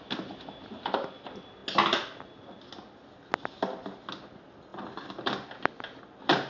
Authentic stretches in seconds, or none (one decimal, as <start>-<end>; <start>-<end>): 0.0-6.5